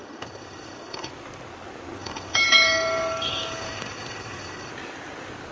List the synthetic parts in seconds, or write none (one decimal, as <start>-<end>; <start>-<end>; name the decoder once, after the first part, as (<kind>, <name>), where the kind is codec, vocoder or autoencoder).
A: 0.0-1.1 (codec, DAC); 2.0-4.7